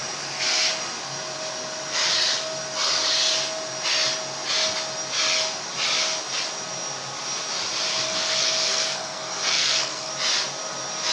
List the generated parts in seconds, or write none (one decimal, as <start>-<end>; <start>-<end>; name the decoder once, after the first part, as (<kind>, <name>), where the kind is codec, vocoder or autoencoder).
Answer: 7.9-10.1 (codec, SNAC)